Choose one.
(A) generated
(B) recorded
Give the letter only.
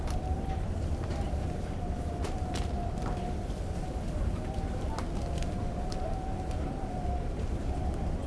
A